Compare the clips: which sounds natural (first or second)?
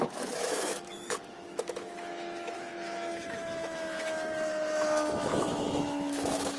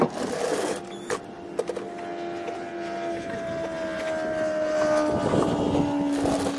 second